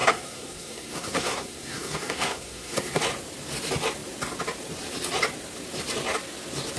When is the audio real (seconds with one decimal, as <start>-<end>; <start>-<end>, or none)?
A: 3.0-6.8